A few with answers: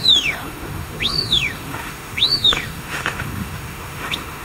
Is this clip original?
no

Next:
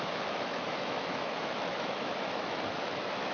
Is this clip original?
no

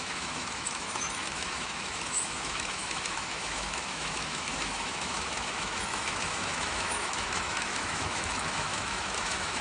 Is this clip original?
no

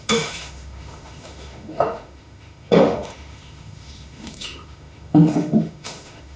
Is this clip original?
no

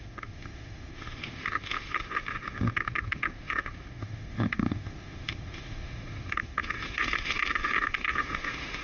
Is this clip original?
no